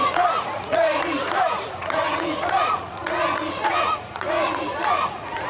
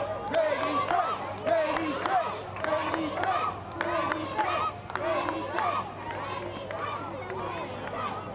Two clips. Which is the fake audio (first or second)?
first